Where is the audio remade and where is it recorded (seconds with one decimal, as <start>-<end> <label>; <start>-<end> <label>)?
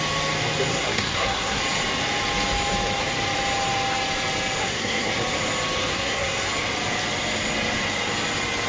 0.0-0.7 recorded; 0.7-1.6 remade; 1.6-4.6 recorded; 4.6-5.1 remade; 5.1-5.9 recorded; 5.9-6.5 remade; 6.5-8.7 recorded